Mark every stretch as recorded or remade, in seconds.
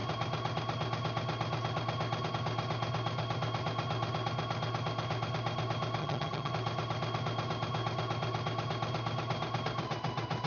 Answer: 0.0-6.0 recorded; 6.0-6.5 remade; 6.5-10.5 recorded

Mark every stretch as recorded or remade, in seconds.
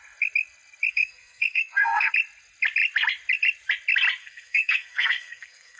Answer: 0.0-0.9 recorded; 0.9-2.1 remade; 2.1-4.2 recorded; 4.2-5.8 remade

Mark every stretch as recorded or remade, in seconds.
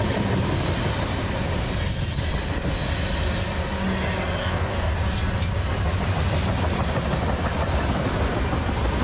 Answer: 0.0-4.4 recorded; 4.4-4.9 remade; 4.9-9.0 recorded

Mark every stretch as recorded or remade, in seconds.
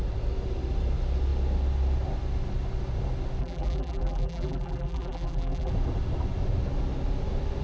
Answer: 0.0-3.4 recorded; 3.4-5.7 remade; 5.7-7.6 recorded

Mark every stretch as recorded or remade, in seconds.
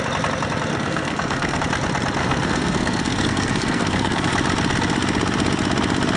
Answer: 0.0-0.7 recorded; 0.7-1.6 remade; 1.6-2.2 recorded; 2.2-4.3 remade; 4.3-6.2 recorded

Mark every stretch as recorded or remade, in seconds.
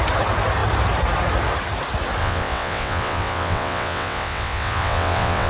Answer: 0.0-2.2 recorded; 2.2-5.5 remade